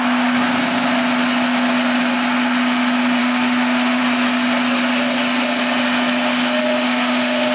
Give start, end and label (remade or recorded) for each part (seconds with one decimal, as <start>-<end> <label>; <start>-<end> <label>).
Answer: 0.0-3.2 recorded; 3.2-4.0 remade; 4.0-6.6 recorded; 6.6-7.5 remade